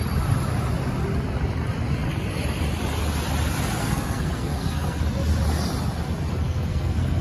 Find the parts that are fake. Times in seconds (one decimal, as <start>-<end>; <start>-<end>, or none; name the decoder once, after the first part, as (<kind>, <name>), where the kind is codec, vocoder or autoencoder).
3.8-5.0 (codec, SNAC); 6.3-7.2